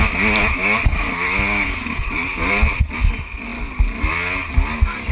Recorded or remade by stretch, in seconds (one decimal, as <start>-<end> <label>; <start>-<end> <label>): 0.0-0.8 recorded; 0.8-2.1 remade; 2.1-5.1 recorded